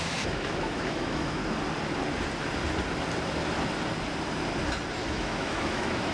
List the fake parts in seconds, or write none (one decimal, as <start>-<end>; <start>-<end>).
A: 0.0-1.4; 5.1-6.1